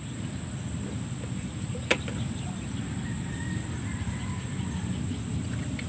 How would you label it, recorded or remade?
recorded